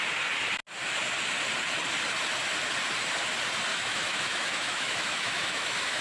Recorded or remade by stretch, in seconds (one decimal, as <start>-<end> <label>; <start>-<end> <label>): 0.0-3.7 recorded; 3.7-6.0 remade